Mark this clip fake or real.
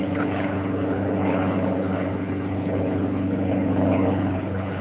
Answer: fake